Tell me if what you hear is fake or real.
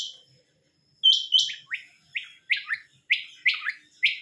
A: real